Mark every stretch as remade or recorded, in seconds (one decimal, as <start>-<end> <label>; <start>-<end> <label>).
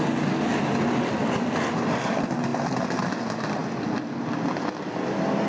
0.0-5.5 recorded